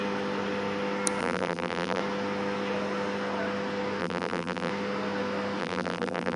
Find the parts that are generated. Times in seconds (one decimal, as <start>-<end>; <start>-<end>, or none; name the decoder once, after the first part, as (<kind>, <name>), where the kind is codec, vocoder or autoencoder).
1.2-2.0 (vocoder, BigVGAN v2); 4.0-4.7; 5.6-6.4